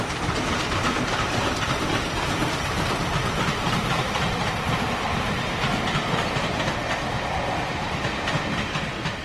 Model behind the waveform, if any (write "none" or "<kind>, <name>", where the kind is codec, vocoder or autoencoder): vocoder, BigVGAN v2